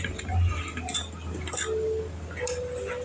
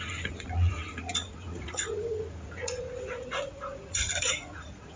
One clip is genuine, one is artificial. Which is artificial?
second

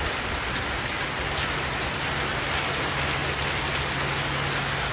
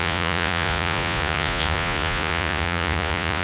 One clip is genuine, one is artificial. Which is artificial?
second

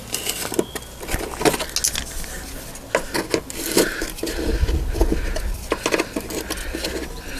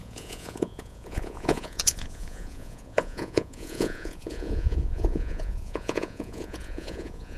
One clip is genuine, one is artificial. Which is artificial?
second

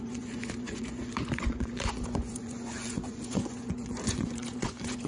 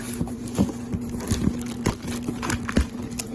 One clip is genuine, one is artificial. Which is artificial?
first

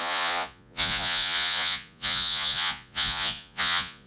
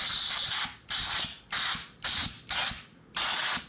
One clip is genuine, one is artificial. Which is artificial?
first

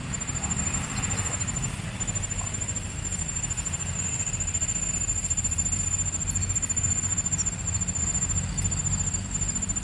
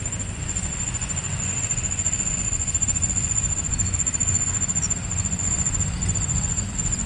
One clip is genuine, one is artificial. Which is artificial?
second